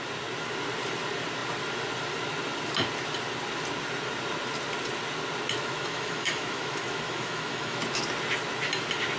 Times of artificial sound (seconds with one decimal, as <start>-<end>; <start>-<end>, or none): 5.6-7.8